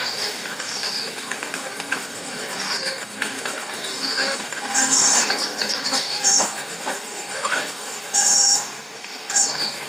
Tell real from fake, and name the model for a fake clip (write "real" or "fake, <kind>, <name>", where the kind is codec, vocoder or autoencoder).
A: fake, codec, DAC